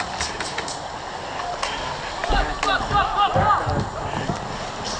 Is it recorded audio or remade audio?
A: recorded